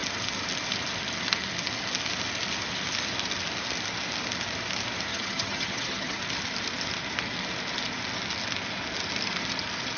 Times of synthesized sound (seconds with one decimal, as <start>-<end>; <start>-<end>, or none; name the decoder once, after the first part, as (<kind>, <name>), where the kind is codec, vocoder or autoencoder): 5.1-6.2 (vocoder, HiFi-GAN)